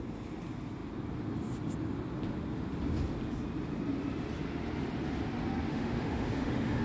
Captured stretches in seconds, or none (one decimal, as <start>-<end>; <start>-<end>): 0.0-5.7